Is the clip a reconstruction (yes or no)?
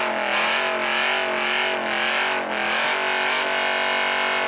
no